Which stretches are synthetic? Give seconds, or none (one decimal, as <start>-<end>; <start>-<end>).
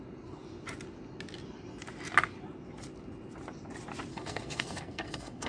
4.1-5.5